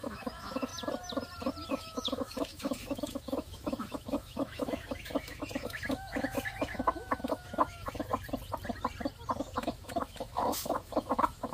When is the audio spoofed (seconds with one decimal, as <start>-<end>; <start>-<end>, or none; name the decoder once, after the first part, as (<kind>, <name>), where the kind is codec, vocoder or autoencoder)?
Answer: 0.0-0.7 (autoencoder, DAC-VAE); 1.7-8.1; 9.4-11.5